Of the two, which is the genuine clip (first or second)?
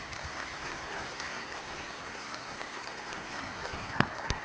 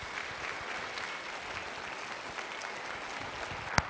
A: second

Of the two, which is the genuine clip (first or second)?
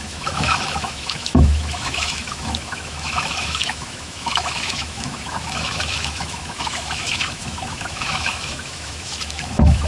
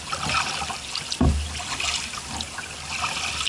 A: second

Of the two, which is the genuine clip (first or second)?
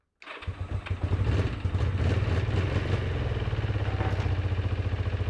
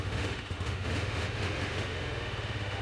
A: first